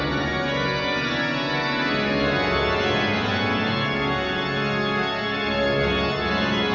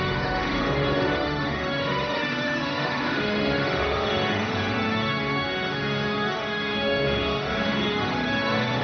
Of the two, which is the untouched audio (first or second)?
first